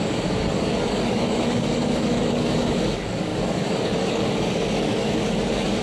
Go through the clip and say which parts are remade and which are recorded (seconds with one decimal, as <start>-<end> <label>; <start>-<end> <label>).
0.0-5.8 remade